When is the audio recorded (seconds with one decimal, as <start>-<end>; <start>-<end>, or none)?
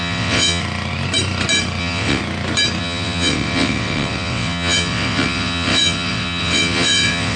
0.6-1.8; 2.2-2.8